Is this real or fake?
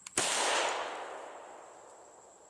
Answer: real